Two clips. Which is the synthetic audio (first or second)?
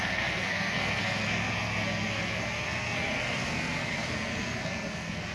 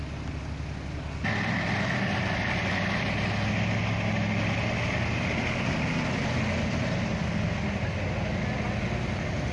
first